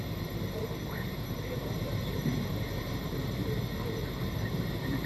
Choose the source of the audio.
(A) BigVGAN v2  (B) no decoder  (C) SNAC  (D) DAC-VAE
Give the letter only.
A